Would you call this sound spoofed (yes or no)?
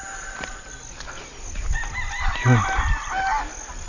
no